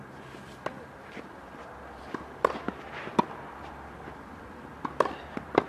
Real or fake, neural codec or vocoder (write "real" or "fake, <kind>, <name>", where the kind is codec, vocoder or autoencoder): fake, vocoder, BigVGAN v2